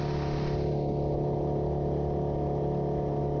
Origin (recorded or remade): recorded